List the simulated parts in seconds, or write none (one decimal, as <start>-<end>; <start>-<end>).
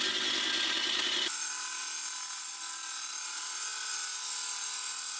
none